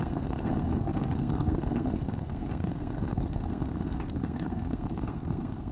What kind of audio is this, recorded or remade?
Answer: remade